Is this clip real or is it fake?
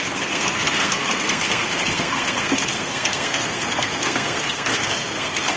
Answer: fake